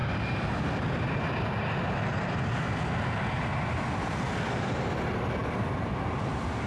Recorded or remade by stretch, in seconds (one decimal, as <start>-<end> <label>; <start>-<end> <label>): 0.0-6.7 recorded